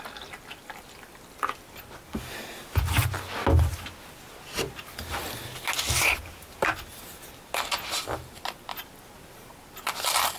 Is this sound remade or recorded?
recorded